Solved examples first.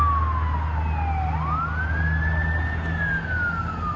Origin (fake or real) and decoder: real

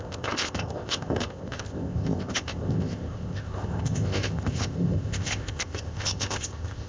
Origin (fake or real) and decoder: fake, codec, ZipCodec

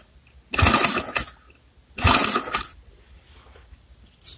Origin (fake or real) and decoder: real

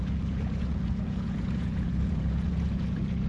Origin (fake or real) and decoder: fake, vocoder, Vocos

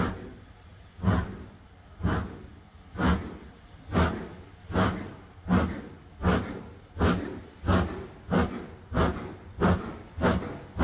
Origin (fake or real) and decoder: real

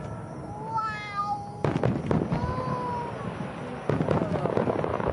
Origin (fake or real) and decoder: real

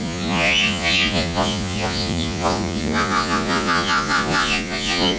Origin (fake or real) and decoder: fake, vocoder, Vocos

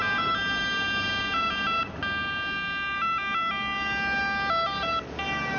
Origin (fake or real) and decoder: real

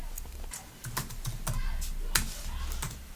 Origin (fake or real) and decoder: real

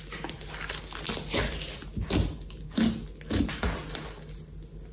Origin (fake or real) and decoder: real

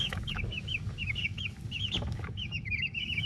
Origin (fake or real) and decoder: fake, codec, DAC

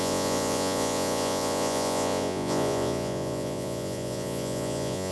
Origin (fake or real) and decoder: fake, vocoder, Vocos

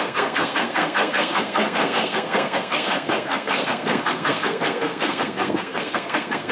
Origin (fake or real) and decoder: fake, codec, SNAC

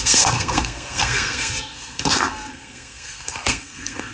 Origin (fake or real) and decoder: fake, codec, SNAC